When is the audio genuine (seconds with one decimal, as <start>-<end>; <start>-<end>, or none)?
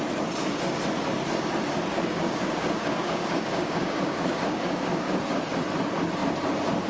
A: 0.0-1.9; 5.2-6.9